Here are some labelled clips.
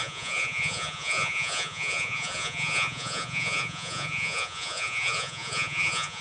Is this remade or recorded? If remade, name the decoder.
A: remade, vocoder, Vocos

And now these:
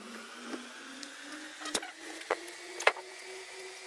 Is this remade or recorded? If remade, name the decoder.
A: remade, vocoder, Vocos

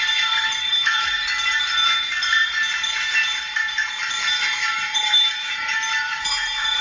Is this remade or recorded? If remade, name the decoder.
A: remade, vocoder, BigVGAN v2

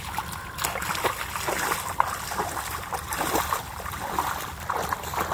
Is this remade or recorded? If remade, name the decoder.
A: recorded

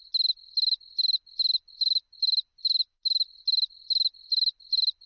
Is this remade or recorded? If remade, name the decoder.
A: recorded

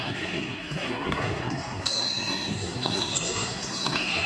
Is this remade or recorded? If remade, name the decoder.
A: remade, codec, SNAC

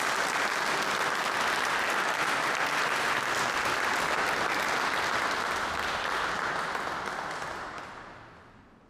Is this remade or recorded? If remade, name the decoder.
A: recorded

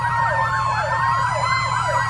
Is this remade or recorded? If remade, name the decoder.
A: recorded